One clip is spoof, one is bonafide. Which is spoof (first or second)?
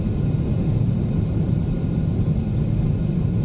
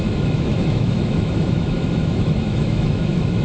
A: second